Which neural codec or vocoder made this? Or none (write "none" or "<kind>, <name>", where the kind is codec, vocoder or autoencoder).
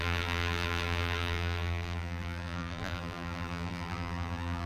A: vocoder, BigVGAN v2